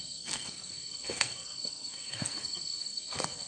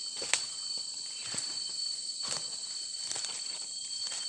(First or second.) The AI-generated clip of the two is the first